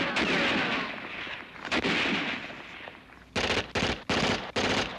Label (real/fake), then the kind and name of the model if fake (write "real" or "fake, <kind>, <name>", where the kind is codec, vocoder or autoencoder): real